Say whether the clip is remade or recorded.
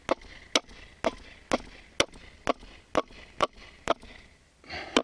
recorded